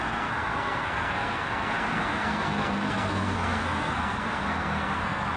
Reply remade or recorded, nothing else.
remade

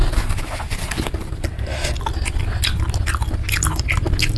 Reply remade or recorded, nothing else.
recorded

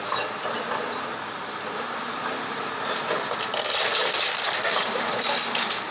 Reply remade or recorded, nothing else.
recorded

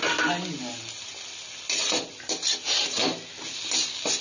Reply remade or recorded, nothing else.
recorded